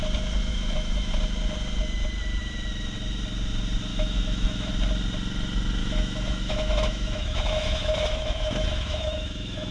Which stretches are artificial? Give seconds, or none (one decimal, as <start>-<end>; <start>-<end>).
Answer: 0.5-1.1; 3.9-4.7; 5.8-9.7